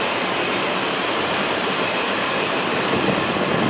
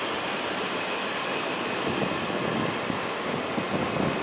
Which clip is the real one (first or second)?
second